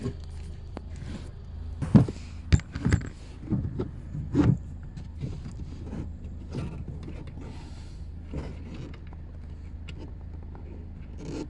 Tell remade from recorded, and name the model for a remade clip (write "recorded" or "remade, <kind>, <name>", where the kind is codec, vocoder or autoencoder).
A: recorded